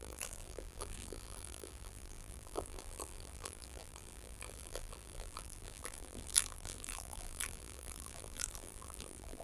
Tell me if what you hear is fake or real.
fake